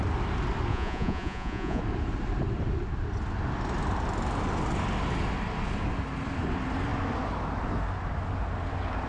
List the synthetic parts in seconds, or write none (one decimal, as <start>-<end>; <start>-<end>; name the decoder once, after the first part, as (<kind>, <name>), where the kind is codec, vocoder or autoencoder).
0.7-1.8 (vocoder, Vocos)